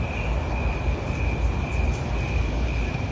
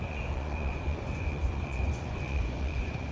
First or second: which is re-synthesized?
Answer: second